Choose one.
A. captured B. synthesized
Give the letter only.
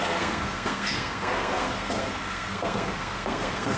B